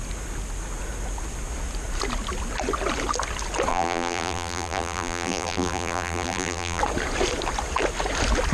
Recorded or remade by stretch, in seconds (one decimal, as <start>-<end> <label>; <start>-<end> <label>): 0.0-3.7 recorded; 3.7-6.8 remade; 6.8-8.5 recorded

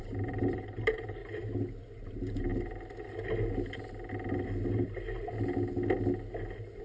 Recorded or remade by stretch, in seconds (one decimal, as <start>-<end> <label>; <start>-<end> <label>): 0.0-1.2 remade; 1.2-1.7 recorded; 1.7-2.5 remade; 2.5-6.8 recorded

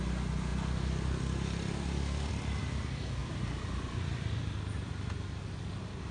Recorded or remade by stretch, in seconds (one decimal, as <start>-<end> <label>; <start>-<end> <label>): 0.0-3.2 recorded; 3.2-4.4 remade; 4.4-6.1 recorded

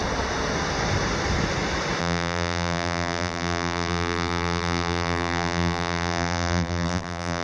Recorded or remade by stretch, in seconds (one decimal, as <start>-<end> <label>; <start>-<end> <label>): 0.0-2.0 recorded; 2.0-7.4 remade

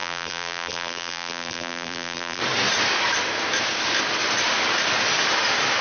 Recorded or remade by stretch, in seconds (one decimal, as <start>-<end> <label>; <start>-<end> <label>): 0.0-2.4 remade; 2.4-5.8 recorded